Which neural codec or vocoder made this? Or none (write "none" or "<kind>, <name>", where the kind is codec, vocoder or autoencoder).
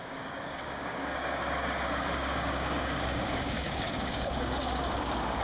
codec, DAC